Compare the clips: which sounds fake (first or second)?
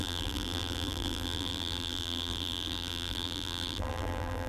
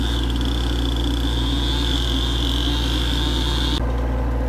first